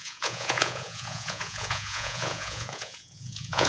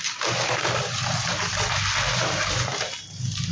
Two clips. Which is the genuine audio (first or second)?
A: second